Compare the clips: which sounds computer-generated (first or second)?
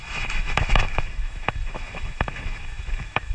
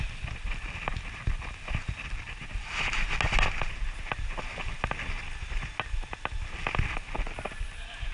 first